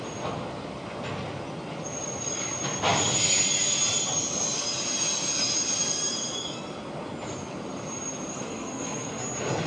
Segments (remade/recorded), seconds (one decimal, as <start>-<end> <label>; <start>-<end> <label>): 0.0-8.3 recorded; 8.3-9.2 remade; 9.2-9.7 recorded